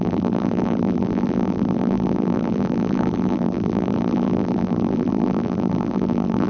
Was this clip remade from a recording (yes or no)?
yes